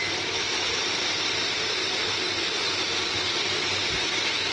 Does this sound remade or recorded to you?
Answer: remade